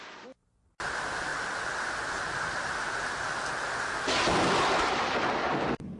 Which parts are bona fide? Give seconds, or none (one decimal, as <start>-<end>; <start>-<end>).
0.0-6.0